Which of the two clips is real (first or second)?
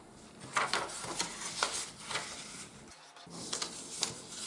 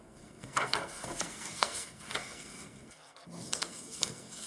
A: first